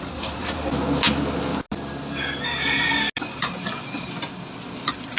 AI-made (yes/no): no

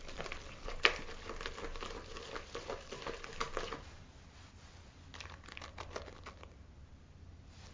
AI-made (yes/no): no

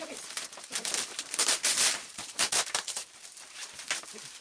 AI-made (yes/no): yes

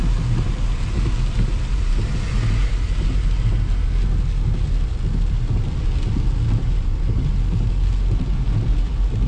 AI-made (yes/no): no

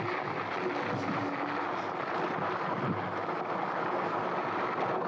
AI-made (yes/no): no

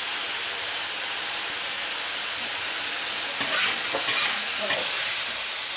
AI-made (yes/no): no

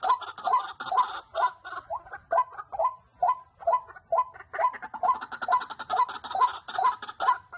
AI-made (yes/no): no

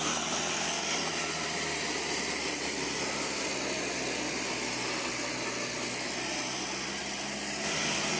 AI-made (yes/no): no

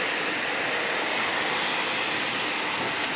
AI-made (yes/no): no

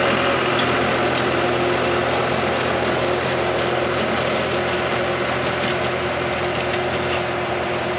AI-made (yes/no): no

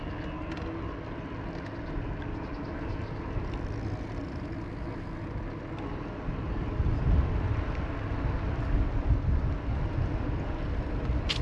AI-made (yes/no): no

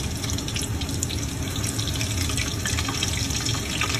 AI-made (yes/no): no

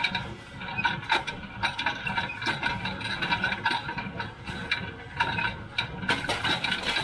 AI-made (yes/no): no